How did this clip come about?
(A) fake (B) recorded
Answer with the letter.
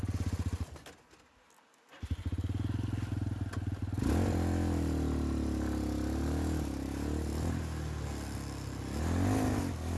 B